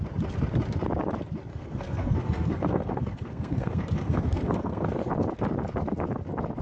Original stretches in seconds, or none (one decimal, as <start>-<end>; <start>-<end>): 0.0-1.5; 5.1-6.6